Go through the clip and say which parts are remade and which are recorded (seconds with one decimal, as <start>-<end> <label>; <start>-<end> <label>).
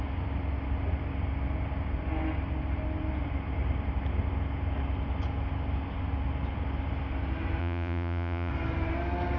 0.0-7.6 recorded; 7.6-8.5 remade; 8.5-9.4 recorded